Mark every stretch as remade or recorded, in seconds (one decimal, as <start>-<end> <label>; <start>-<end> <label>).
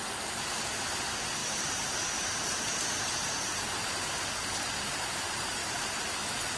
0.0-1.4 recorded; 1.4-4.2 remade; 4.2-5.6 recorded; 5.6-6.6 remade